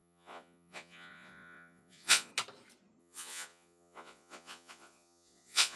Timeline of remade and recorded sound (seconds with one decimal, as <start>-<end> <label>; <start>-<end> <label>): 0.0-2.3 remade; 2.3-3.0 recorded; 3.0-5.8 remade